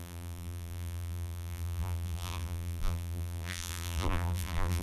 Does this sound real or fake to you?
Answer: fake